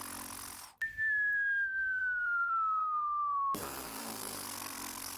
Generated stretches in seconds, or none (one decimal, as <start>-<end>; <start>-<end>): 2.0-5.2